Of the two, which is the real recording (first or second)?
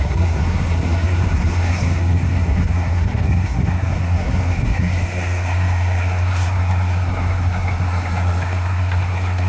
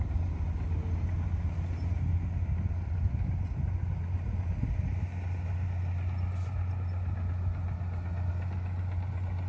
second